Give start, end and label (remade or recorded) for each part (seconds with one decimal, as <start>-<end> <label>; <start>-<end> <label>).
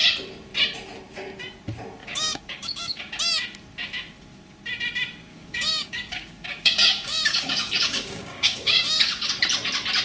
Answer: 0.0-2.0 recorded; 2.0-3.0 remade; 3.0-5.3 recorded; 5.3-9.3 remade; 9.3-10.0 recorded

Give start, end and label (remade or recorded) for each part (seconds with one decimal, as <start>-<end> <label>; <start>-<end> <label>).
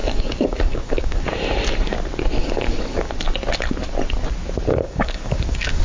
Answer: 0.0-1.3 remade; 1.3-2.4 recorded; 2.4-3.1 remade; 3.1-4.7 recorded; 4.7-5.8 remade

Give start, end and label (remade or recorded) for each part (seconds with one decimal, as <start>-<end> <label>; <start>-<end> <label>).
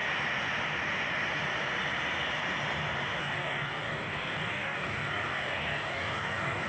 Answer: 0.0-3.2 recorded; 3.2-6.7 remade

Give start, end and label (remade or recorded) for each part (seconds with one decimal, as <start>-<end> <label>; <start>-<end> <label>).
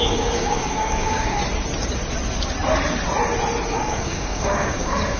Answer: 0.0-1.4 remade; 1.4-3.7 recorded; 3.7-5.2 remade